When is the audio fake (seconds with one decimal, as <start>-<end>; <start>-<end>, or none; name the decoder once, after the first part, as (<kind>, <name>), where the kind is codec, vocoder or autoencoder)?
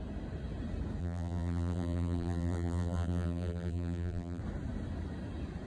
1.0-4.4 (vocoder, BigVGAN v2)